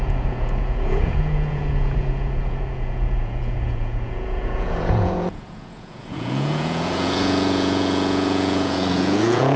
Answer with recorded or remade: remade